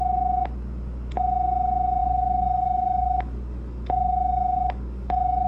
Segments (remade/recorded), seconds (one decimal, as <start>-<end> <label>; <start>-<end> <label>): 0.0-2.0 recorded; 2.0-5.5 remade

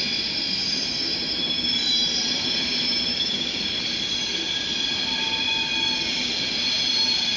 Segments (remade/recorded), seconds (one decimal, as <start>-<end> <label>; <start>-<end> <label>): 0.0-3.1 recorded; 3.1-3.6 remade; 3.6-7.4 recorded

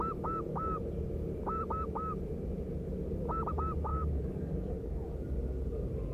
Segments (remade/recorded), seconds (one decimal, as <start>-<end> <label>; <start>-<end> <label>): 0.0-3.9 recorded; 3.9-5.1 remade; 5.1-6.1 recorded

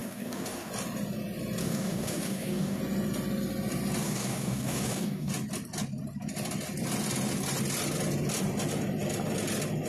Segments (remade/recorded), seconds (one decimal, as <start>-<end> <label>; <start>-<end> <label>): 0.0-0.7 remade; 0.7-1.6 recorded; 1.6-2.8 remade; 2.8-4.0 recorded; 4.0-5.3 remade; 5.3-9.9 recorded

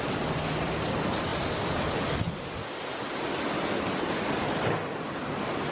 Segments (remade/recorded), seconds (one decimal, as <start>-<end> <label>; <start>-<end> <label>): 0.0-5.7 recorded